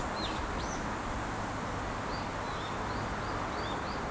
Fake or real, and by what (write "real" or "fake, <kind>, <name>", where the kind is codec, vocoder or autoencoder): real